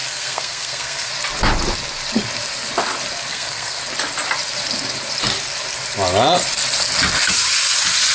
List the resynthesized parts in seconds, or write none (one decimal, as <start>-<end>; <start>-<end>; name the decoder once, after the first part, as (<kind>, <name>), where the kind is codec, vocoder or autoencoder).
0.0-1.1 (codec, SNAC); 3.3-3.8